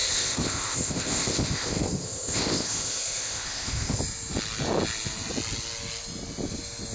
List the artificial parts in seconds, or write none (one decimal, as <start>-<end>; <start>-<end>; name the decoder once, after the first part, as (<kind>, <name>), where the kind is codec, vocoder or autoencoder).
0.0-4.0 (codec, ZipCodec)